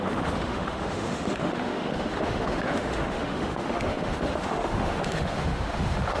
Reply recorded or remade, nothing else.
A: remade